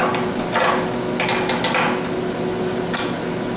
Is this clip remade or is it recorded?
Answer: recorded